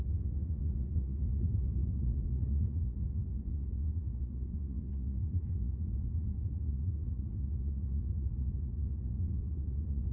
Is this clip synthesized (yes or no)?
yes